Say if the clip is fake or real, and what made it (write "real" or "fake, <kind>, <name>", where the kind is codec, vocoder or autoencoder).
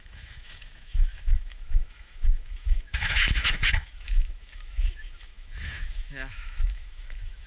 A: fake, autoencoder, DAC-VAE